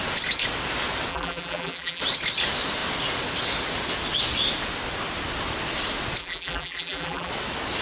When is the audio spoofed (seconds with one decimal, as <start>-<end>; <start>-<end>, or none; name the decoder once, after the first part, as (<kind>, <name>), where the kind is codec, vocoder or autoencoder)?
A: 1.1-2.0 (vocoder, BigVGAN v2); 6.2-7.3